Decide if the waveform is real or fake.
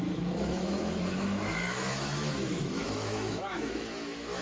fake